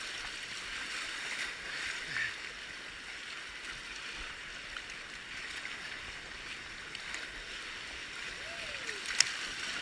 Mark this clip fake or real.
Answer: real